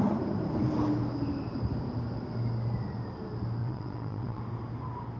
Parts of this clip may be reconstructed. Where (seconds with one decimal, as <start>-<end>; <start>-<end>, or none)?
3.6-4.4